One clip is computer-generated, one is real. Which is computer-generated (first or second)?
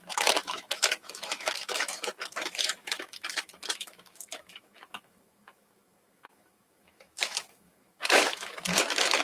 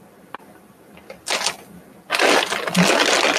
first